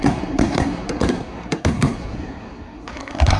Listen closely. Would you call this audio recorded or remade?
remade